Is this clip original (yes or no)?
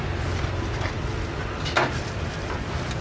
yes